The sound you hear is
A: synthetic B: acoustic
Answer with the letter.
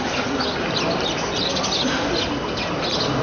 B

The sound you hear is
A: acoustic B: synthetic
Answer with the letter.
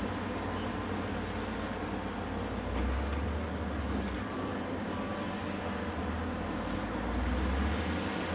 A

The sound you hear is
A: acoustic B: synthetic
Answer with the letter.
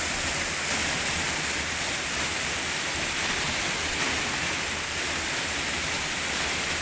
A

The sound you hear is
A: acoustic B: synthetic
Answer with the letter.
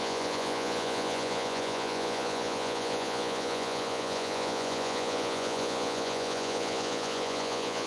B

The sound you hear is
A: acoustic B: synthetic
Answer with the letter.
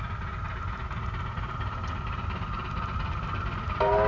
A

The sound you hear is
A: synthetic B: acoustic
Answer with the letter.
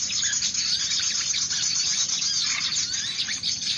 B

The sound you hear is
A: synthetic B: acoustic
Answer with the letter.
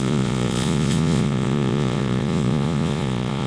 A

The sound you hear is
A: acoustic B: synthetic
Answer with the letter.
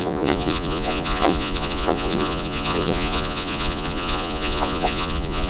B